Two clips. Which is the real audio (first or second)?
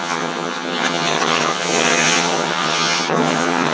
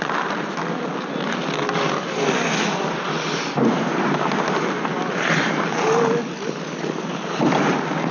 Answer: second